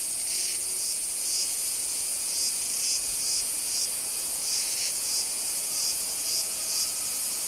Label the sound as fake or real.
fake